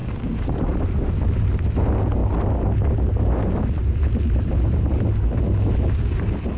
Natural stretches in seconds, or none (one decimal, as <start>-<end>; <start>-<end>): 0.0-6.6